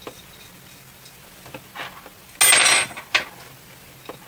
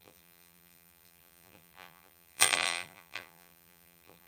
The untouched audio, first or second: first